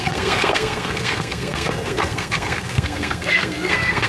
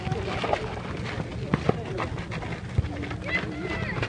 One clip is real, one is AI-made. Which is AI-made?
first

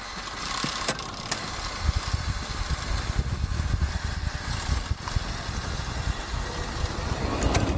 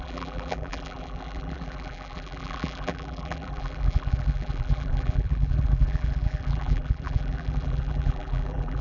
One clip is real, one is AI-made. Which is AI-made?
second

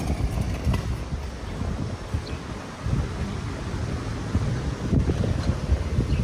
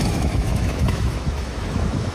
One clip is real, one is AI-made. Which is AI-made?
second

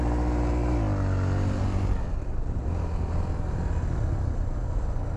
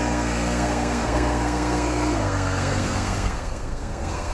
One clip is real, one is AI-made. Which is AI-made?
second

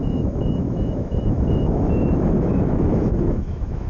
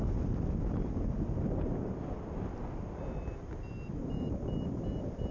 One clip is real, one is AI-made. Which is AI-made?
first